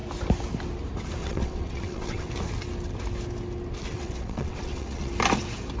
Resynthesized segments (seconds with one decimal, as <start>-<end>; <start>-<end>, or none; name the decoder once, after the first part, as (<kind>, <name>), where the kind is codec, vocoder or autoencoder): 1.2-2.3 (vocoder, WaveNeXt); 3.9-5.1